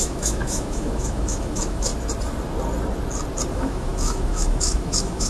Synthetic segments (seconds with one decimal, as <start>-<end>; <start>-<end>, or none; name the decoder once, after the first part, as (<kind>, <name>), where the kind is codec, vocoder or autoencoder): 0.0-1.9 (autoencoder, DAC-VAE); 3.5-5.3